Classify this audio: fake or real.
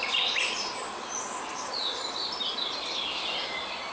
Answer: real